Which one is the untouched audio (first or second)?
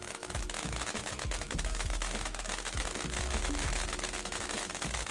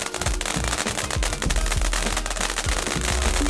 second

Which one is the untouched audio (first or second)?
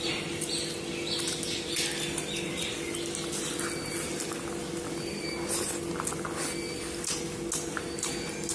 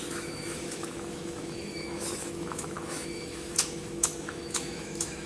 first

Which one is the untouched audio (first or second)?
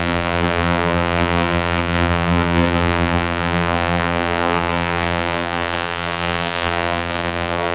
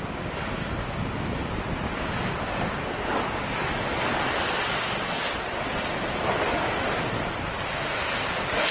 second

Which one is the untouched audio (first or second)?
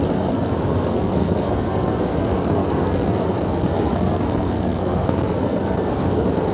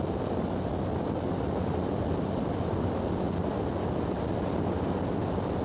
second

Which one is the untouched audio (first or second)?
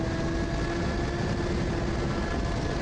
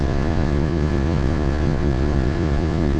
first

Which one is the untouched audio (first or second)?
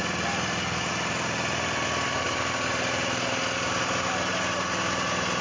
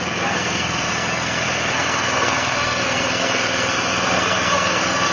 first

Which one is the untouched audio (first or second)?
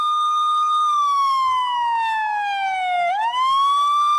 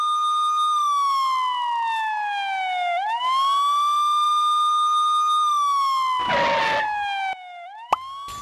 second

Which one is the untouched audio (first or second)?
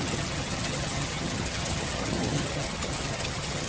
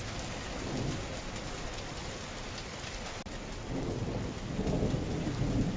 second